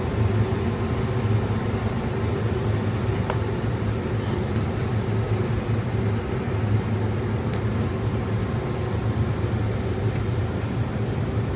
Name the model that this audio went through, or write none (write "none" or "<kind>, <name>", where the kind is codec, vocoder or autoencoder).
none